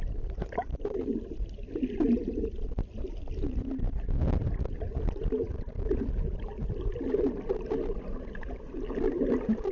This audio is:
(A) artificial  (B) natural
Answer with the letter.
B